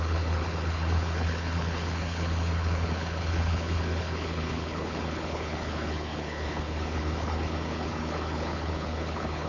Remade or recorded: remade